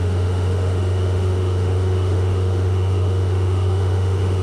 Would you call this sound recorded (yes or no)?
no